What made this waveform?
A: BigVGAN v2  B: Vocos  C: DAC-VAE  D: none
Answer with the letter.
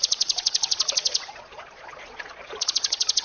B